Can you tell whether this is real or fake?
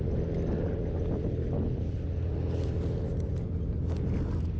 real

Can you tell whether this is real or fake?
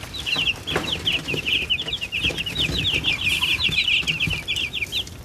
real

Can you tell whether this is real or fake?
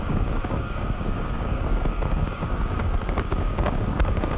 fake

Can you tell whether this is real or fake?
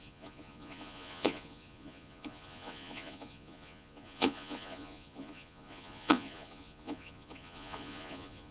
fake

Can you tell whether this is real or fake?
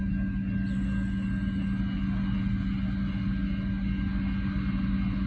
real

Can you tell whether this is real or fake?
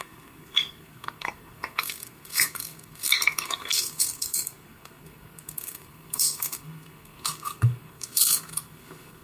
fake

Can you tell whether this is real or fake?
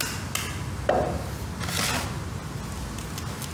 real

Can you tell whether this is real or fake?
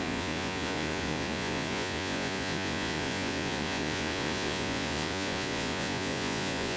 fake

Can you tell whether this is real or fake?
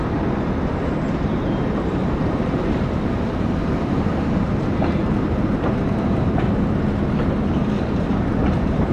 fake